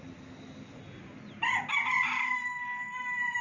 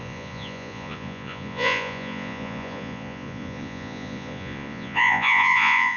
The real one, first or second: first